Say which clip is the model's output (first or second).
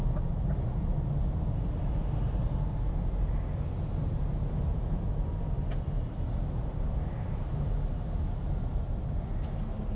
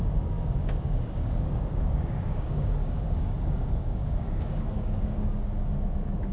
second